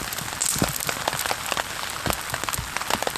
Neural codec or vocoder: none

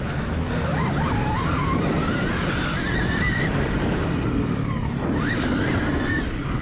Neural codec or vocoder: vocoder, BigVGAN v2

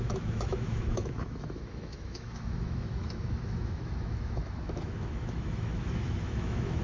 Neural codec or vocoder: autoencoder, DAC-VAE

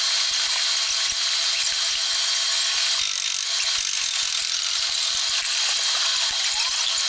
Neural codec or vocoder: none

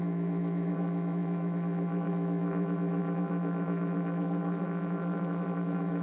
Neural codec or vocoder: vocoder, BigVGAN v2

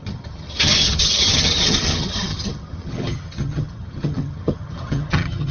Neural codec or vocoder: vocoder, HiFi-GAN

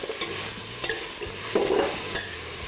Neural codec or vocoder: none